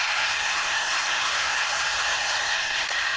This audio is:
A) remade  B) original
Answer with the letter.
A